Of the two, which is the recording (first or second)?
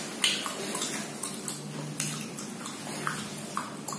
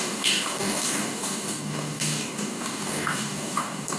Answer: first